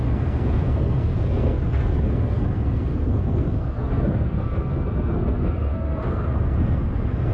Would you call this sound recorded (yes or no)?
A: no